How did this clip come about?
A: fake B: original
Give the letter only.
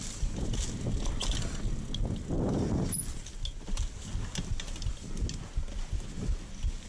B